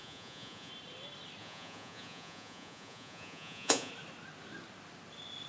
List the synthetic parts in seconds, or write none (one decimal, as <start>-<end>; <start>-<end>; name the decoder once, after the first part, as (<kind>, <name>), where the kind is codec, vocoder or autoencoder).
0.0-0.7 (vocoder, Vocos); 1.4-3.9